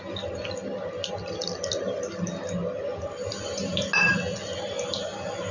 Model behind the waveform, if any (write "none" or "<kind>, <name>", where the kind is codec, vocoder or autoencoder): none